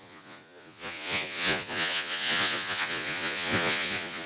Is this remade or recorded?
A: remade